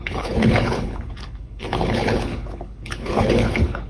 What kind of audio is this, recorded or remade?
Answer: remade